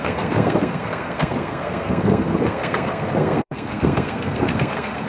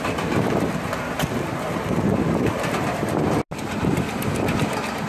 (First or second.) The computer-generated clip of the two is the first